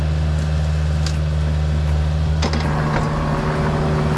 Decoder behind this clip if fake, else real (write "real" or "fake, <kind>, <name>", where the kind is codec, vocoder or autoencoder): real